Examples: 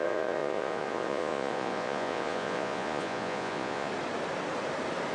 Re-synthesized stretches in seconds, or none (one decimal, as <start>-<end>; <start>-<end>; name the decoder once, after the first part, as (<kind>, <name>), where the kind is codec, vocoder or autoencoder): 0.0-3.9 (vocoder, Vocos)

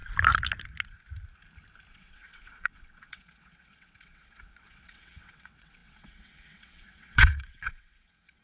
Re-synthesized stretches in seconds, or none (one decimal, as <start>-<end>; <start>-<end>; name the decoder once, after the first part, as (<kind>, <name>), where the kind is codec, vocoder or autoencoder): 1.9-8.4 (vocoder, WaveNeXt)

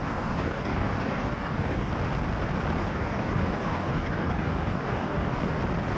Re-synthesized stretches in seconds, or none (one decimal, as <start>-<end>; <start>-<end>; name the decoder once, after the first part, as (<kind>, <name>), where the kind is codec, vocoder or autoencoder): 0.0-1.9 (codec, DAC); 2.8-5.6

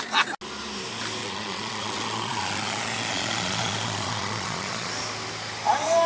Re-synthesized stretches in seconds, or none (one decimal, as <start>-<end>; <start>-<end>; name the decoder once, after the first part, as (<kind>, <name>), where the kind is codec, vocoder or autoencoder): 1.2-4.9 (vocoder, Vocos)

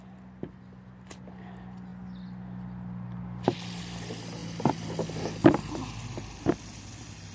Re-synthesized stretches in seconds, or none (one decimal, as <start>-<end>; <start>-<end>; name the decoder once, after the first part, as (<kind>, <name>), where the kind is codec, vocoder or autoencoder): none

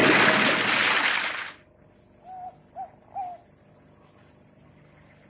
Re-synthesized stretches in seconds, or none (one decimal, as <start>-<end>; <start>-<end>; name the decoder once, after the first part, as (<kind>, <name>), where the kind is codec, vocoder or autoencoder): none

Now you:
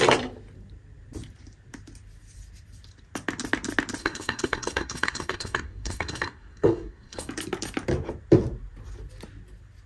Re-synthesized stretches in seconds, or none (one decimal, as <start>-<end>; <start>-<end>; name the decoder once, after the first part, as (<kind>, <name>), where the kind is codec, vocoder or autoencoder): 4.0-7.3 (codec, SNAC)

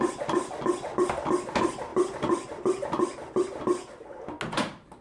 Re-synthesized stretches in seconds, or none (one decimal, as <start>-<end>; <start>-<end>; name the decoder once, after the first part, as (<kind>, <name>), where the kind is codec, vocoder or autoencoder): none